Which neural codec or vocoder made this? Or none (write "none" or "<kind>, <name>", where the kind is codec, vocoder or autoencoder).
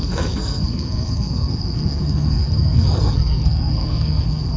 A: codec, SNAC